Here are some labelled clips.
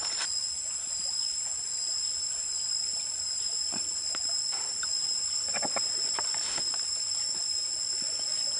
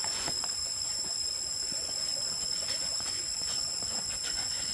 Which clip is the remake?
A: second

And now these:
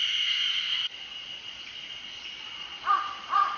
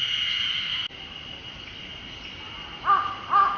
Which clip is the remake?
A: first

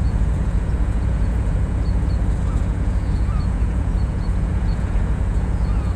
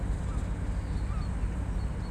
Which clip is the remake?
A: first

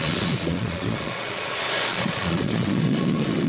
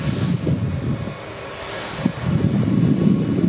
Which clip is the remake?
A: first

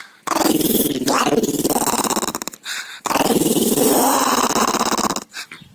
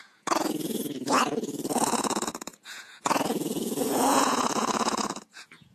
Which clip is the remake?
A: second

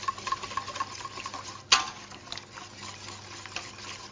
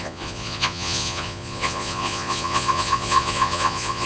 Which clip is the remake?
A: second